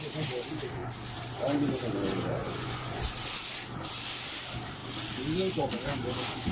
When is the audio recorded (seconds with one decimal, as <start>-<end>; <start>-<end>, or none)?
0.0-2.4; 3.0-6.5